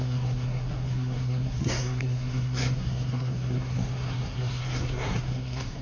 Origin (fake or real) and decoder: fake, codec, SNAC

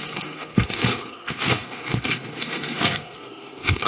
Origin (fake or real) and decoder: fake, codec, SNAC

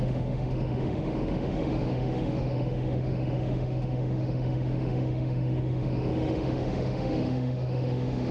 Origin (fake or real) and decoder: fake, autoencoder, DAC-VAE